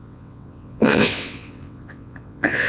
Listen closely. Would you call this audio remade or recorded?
remade